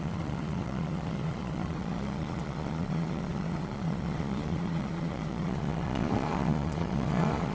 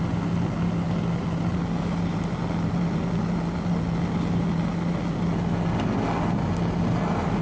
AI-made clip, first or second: first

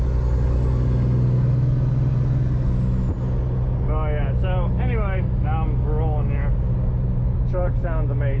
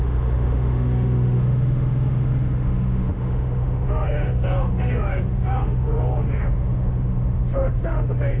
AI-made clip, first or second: second